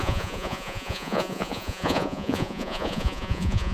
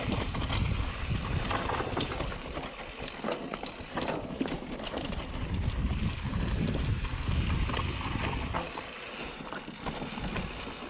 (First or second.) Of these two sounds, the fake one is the first